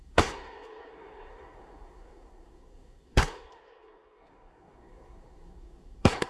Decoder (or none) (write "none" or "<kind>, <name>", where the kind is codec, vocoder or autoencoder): codec, SNAC